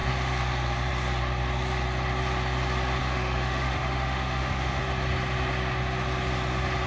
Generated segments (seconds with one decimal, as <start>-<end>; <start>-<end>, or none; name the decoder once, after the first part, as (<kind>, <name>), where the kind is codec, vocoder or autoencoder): 3.0-4.8 (autoencoder, DAC-VAE)